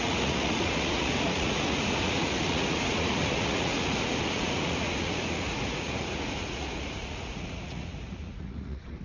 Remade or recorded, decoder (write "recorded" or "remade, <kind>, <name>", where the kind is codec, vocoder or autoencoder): remade, vocoder, Vocos